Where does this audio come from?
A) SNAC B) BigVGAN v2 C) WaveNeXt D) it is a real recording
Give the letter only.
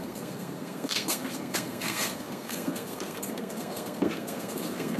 A